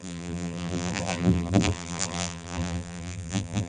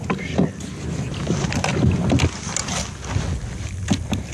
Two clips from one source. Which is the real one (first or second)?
second